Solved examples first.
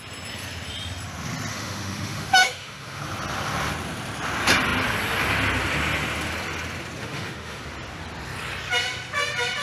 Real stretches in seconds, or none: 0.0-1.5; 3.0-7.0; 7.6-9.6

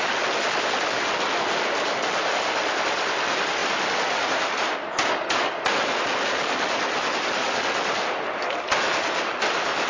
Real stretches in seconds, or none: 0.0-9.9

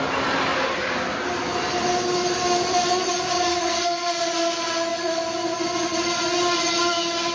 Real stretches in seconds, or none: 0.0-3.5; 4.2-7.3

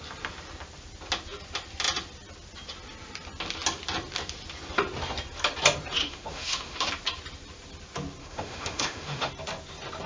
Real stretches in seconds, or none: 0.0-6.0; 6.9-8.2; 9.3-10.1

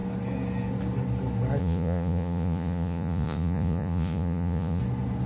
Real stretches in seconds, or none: 0.0-1.6; 4.8-5.3

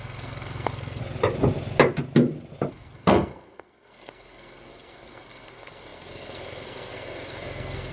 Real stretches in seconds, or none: 1.0-2.7